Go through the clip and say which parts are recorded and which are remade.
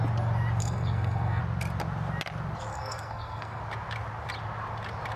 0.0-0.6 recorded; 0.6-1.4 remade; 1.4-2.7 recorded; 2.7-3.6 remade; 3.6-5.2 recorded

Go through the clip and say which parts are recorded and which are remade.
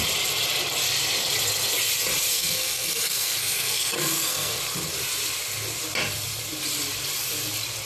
0.0-2.3 recorded; 2.3-4.6 remade; 4.6-7.9 recorded